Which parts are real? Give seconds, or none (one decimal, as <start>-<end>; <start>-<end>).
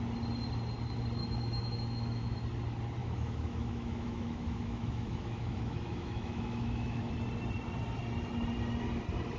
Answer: 0.0-1.2; 2.4-3.0; 7.1-9.4